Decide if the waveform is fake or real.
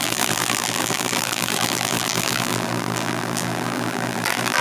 fake